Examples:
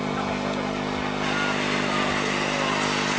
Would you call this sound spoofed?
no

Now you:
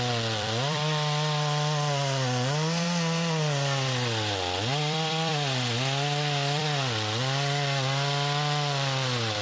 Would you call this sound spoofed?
yes